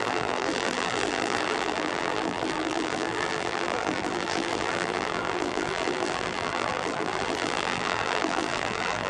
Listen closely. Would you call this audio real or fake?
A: fake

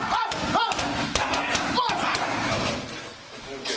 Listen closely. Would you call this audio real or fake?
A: real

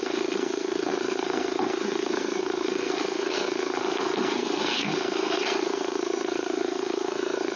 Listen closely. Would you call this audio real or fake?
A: fake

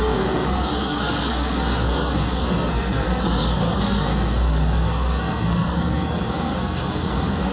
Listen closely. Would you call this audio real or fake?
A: fake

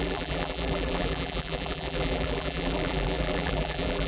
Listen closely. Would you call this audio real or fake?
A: fake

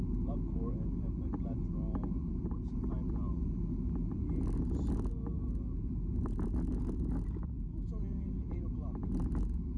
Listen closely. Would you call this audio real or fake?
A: real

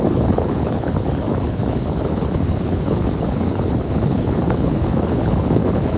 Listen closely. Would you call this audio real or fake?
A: fake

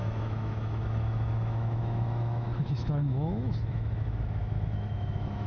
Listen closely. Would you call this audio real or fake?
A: fake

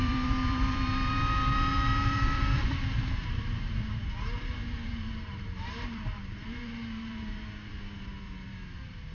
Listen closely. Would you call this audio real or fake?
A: fake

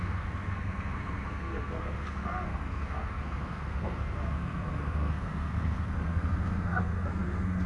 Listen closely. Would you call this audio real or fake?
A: fake